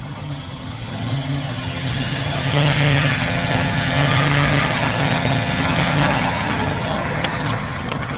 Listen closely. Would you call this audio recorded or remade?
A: remade